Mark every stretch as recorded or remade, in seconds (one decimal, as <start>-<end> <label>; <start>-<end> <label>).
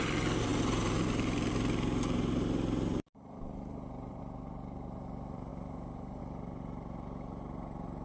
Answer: 0.0-8.0 remade